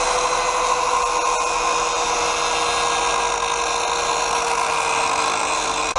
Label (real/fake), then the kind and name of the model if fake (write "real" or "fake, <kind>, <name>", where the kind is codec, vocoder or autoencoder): real